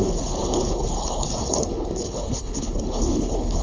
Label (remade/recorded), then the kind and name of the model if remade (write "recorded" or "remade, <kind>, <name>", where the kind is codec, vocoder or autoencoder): remade, codec, HILCodec